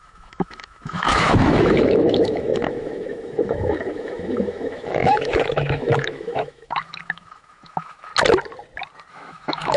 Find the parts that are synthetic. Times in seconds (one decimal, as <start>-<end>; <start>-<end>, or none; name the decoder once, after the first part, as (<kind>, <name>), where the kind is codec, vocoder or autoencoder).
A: 0.0-8.1 (autoencoder, DAC-VAE); 9.1-9.8